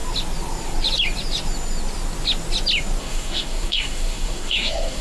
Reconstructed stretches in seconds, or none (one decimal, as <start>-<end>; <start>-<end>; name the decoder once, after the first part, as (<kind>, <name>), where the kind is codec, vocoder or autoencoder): 3.0-5.0 (codec, SNAC)